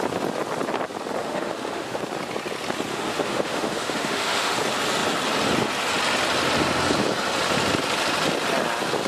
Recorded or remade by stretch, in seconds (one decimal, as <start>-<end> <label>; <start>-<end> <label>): 0.0-1.2 recorded; 1.2-2.0 remade; 2.0-2.9 recorded; 2.9-4.6 remade; 4.6-9.1 recorded